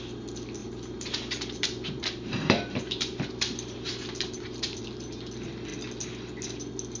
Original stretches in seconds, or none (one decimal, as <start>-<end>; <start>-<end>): 0.0-0.6; 4.8-7.0